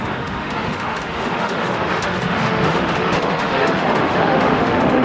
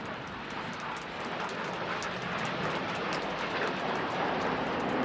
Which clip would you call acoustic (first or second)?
second